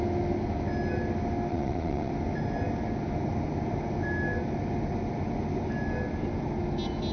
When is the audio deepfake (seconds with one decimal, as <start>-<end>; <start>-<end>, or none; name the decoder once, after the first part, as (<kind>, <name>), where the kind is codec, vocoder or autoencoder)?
1.5-2.1 (vocoder, Vocos)